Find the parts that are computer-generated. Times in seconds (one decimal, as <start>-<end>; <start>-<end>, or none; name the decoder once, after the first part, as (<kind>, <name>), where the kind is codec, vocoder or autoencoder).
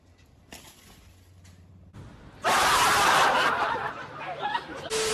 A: none